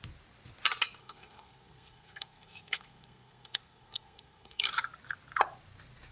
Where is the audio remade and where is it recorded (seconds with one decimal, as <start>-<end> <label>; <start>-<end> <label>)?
0.0-1.0 recorded; 1.0-4.7 remade; 4.7-6.1 recorded